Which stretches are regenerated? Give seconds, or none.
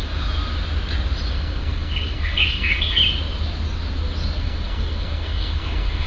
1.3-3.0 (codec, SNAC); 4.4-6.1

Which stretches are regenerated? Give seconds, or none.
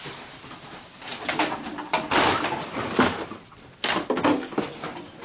none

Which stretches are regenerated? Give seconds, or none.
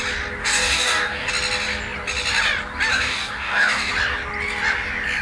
0.4-1.3 (codec, DAC); 2.9-3.9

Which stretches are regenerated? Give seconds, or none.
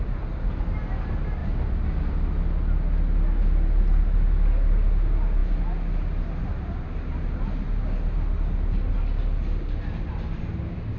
none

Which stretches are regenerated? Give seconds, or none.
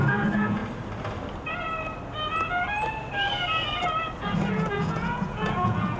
0.0-0.6 (vocoder, Vocos); 4.2-6.0